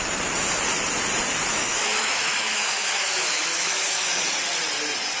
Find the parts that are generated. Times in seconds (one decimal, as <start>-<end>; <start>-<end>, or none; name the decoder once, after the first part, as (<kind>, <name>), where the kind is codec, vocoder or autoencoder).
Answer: 1.5-4.2 (autoencoder, DAC-VAE)